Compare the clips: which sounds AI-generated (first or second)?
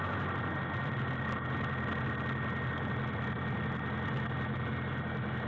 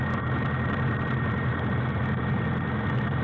second